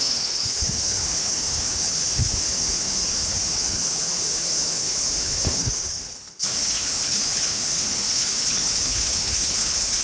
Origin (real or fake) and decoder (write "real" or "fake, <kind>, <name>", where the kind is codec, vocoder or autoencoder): fake, codec, HILCodec